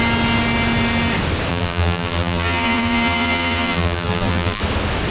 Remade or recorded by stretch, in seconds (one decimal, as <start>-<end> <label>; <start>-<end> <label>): 0.0-1.5 recorded; 1.5-4.6 remade; 4.6-5.1 recorded